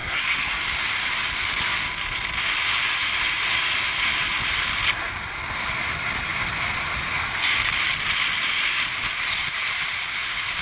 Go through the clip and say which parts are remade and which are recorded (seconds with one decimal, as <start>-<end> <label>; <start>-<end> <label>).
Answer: 0.0-0.6 remade; 0.6-10.6 recorded